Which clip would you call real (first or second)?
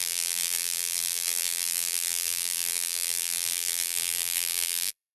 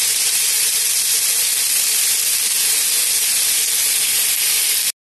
second